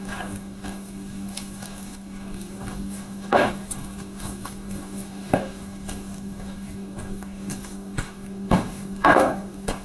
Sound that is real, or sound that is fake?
fake